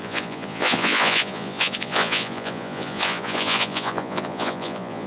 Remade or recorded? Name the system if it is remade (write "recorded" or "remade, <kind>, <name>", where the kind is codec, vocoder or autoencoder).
remade, vocoder, Vocos